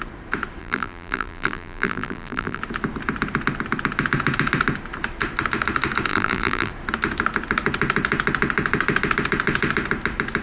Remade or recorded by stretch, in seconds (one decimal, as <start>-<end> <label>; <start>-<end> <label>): 0.0-0.6 recorded; 0.6-2.6 remade; 2.6-6.1 recorded; 6.1-6.7 remade; 6.7-10.4 recorded